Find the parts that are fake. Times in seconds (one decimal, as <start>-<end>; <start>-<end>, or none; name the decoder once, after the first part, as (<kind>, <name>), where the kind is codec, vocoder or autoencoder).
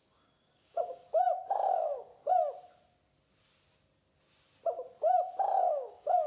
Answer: 0.0-2.1 (codec, DAC); 5.6-6.3